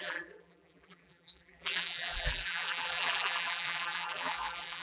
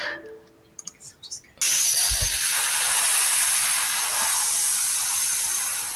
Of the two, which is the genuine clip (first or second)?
second